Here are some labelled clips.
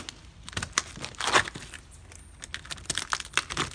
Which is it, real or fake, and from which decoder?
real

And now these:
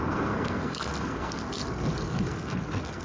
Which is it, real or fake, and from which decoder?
fake, codec, SNAC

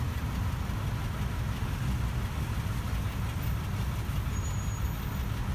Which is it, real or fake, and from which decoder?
real